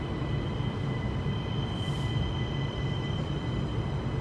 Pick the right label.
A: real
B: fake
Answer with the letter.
A